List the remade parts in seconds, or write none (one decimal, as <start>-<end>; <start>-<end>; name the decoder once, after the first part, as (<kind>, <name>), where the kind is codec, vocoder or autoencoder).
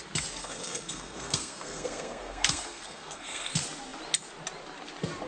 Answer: 0.4-3.5 (codec, SNAC)